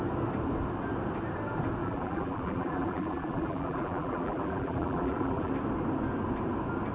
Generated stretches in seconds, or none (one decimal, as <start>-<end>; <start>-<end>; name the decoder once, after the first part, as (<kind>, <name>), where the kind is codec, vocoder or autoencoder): 1.8-5.5 (vocoder, BigVGAN v2)

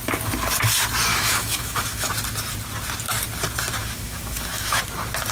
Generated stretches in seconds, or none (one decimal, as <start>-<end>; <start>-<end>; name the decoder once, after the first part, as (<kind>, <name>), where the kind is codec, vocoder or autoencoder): 1.1-2.1 (autoencoder, DAC-VAE); 3.8-4.8

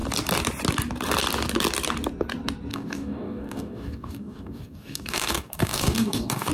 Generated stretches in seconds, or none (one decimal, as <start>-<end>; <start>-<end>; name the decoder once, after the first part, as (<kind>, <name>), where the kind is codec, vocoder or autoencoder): 2.7-6.5 (codec, DAC)

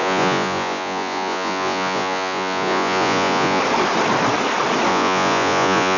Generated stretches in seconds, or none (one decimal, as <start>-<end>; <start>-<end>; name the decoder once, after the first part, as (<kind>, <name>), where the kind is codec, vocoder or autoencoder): 0.0-3.6 (vocoder, Vocos); 4.9-6.0